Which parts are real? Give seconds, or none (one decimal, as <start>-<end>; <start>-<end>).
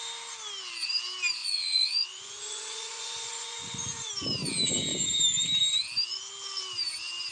0.0-1.4; 4.1-7.3